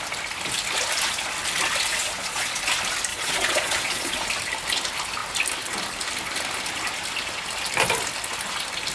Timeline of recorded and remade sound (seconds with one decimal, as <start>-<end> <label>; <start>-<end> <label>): 0.0-1.9 recorded; 1.9-2.6 remade; 2.6-3.1 recorded; 3.1-4.3 remade; 4.3-8.9 recorded